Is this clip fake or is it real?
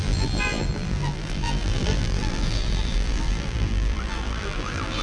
fake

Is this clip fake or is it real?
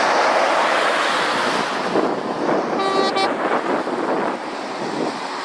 real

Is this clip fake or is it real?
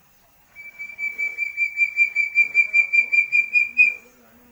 real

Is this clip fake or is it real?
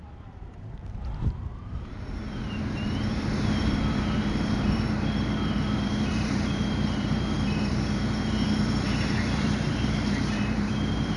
fake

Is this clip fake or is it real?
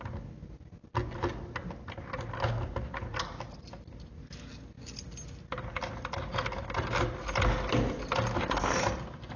real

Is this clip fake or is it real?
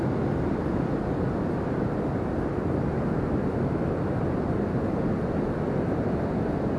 real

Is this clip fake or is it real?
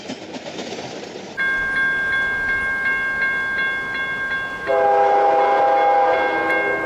real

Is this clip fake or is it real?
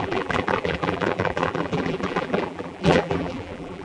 fake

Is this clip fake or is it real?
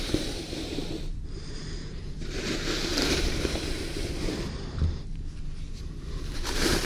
fake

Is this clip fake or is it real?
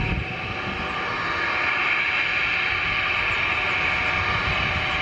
real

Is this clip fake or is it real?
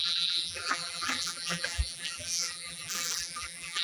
fake